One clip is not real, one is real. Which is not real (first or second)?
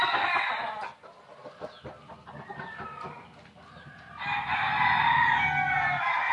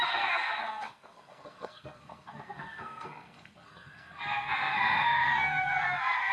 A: second